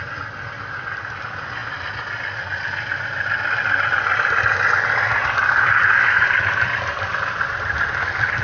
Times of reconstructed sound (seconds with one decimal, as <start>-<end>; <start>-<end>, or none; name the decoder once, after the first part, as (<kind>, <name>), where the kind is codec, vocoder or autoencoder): none